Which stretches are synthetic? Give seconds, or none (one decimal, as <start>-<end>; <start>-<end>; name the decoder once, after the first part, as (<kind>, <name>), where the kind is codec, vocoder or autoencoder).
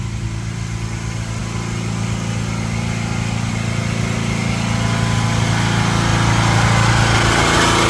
none